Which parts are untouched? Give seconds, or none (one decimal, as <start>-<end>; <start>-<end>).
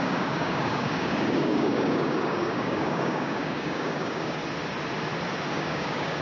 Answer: 4.4-5.5